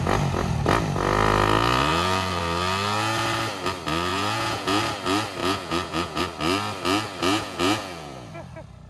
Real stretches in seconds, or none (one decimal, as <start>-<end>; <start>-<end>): 0.0-1.9; 2.4-4.1; 4.8-5.4; 6.2-7.2; 8.3-8.9